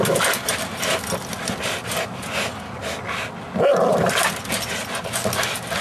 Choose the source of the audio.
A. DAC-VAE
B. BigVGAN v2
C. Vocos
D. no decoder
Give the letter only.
D